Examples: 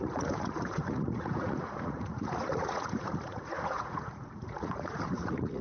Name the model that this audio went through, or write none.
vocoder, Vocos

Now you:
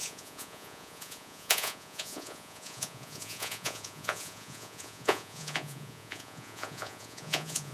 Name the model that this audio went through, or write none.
vocoder, Vocos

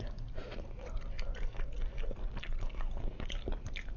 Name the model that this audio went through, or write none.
none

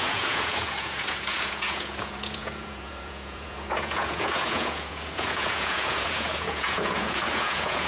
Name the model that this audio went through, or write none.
vocoder, Vocos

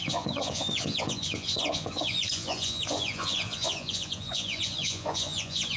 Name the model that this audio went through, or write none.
vocoder, Vocos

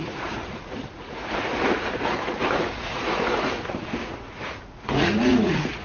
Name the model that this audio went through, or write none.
vocoder, Vocos